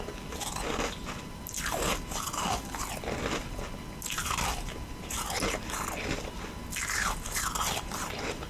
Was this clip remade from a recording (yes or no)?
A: no